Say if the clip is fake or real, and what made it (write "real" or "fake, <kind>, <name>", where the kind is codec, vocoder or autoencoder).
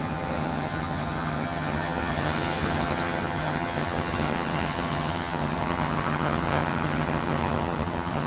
fake, vocoder, HiFi-GAN